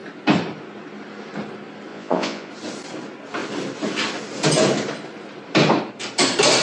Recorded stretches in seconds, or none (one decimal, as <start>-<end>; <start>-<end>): 0.0-1.9; 2.5-6.6